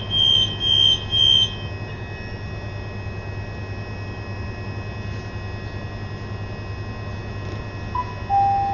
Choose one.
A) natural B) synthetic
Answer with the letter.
A